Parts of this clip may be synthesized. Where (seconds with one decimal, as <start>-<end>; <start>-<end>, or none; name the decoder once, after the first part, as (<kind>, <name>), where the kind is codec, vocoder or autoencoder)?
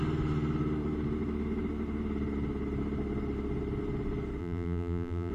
4.4-5.3 (vocoder, BigVGAN v2)